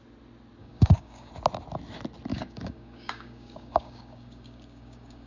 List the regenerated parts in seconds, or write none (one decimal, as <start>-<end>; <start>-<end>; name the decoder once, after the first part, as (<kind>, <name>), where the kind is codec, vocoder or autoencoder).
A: 0.6-1.3 (codec, DAC); 2.3-5.3